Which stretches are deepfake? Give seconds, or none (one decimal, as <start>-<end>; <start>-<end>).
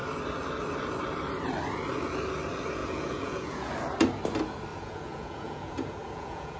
2.8-3.7; 4.7-6.6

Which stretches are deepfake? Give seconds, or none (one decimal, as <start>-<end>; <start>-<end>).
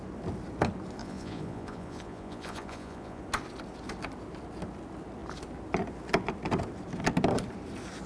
1.0-3.2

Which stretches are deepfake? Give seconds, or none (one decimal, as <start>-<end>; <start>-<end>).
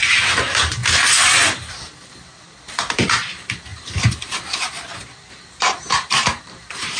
0.0-0.8; 2.6-7.0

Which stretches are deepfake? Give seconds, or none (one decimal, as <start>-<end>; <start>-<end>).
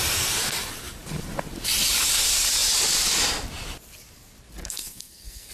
4.6-5.5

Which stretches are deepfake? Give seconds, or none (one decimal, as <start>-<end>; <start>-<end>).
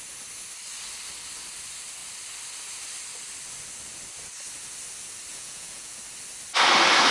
5.3-6.0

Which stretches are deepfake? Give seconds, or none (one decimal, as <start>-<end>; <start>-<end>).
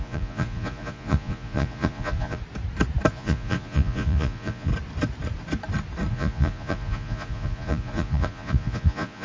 0.0-2.4; 3.1-4.7; 6.1-9.2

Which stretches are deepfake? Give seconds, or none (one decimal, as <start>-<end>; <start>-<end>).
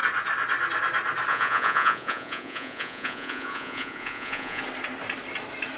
1.3-4.6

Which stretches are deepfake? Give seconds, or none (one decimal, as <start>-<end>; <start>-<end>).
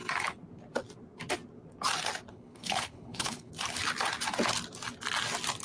2.3-3.5